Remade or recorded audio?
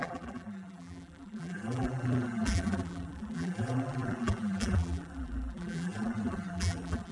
remade